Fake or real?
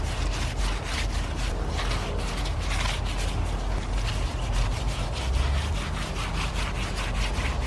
real